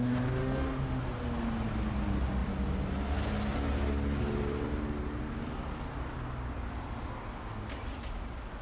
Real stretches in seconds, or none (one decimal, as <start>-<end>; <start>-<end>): 0.0-0.4; 1.0-8.6